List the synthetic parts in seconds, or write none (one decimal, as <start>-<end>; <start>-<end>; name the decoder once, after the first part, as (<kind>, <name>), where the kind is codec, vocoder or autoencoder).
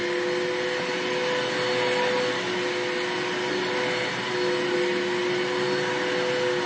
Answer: none